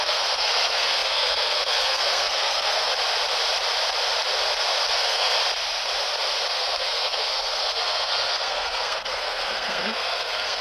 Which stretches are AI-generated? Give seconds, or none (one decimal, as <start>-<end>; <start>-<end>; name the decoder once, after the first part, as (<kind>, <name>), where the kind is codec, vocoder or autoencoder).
0.0-2.9 (codec, SNAC); 4.9-5.4; 6.5-10.6